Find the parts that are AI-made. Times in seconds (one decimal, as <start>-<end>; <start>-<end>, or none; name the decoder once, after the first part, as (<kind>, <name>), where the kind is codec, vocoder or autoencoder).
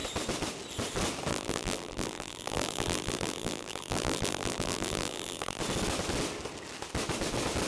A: 1.3-5.6 (vocoder, BigVGAN v2)